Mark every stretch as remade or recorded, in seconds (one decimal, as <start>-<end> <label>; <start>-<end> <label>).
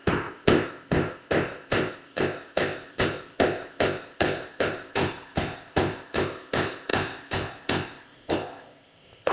0.0-9.3 remade